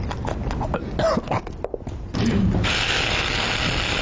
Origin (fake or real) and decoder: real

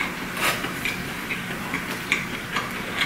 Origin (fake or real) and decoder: real